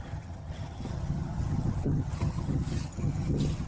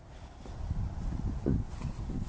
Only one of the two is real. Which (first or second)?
second